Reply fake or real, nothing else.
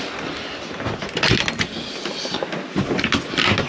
real